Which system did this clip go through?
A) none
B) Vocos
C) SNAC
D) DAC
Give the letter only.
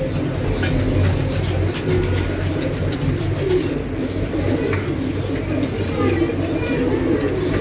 A